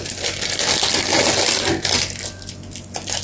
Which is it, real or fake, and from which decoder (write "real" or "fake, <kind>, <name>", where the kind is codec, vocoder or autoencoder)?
real